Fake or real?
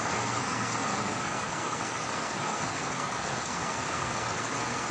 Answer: fake